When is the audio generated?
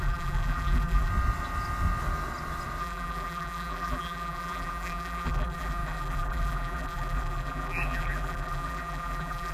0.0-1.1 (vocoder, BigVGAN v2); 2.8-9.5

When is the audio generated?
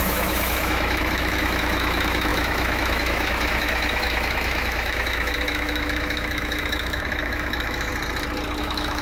0.0-7.9 (autoencoder, DAC-VAE); 8.6-9.0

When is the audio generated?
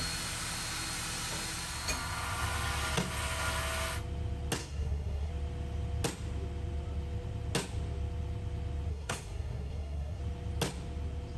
4.6-5.3 (codec, SNAC); 8.9-10.2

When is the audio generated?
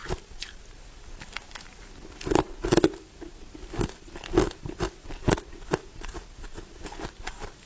none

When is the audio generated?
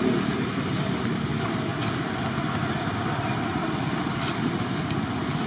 none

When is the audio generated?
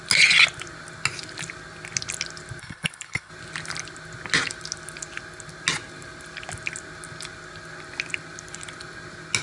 2.6-3.3 (codec, HILCodec)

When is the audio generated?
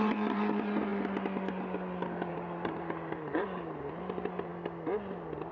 0.0-0.9 (vocoder, BigVGAN v2); 2.3-4.5